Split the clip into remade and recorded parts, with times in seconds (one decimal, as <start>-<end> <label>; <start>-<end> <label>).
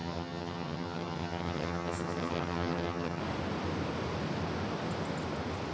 0.0-3.2 remade; 3.2-5.7 recorded